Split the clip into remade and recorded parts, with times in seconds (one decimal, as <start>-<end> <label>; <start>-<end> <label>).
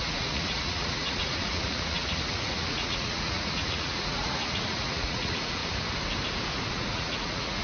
0.0-5.6 remade; 5.6-6.7 recorded; 6.7-7.6 remade